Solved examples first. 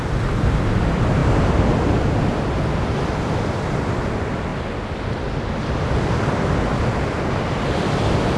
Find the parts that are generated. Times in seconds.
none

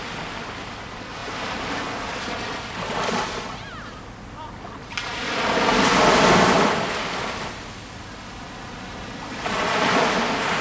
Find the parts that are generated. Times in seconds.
1.2-1.8 (vocoder, BigVGAN v2)

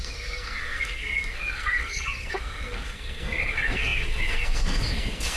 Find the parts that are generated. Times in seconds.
0.0-5.4 (codec, SNAC)

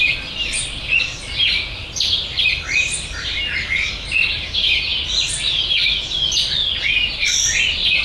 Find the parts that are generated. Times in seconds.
none

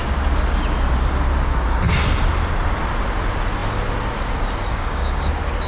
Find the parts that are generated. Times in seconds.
4.7-5.3 (codec, DAC)